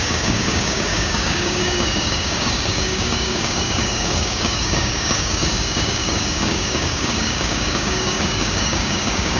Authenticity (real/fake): fake